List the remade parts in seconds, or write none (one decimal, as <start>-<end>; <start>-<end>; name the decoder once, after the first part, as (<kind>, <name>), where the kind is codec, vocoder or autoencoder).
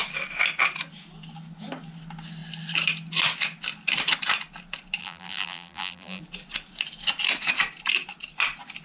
5.0-6.2 (vocoder, BigVGAN v2)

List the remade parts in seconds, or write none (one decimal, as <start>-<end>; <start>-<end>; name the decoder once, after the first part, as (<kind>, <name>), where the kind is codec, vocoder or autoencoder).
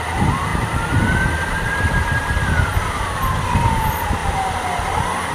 0.0-0.5 (vocoder, BigVGAN v2); 1.6-2.7; 3.2-4.2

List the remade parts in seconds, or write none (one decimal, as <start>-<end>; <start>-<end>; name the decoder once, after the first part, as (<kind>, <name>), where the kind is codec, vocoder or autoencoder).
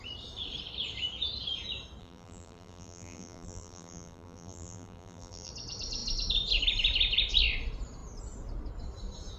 2.0-5.5 (vocoder, BigVGAN v2)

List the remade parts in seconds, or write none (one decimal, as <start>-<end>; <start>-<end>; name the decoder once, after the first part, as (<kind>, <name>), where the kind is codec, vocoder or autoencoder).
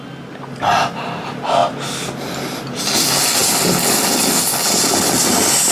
none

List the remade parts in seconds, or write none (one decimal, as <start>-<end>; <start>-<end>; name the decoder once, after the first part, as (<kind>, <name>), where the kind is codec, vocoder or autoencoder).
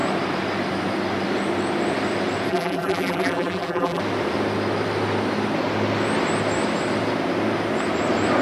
2.5-4.0 (vocoder, BigVGAN v2)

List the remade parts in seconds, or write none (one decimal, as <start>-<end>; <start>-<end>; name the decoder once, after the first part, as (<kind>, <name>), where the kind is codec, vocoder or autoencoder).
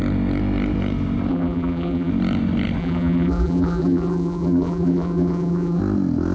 1.3-2.1 (vocoder, BigVGAN v2); 2.8-5.8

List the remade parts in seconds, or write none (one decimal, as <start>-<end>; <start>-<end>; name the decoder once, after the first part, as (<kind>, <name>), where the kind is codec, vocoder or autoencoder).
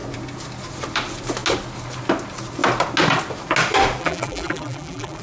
4.0-5.2 (vocoder, BigVGAN v2)